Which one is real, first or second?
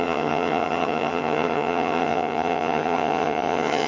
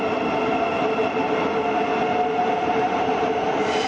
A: second